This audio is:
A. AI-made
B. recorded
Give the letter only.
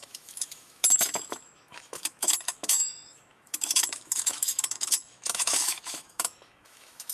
A